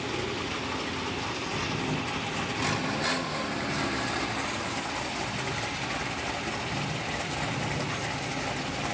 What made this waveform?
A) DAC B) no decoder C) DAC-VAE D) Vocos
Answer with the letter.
B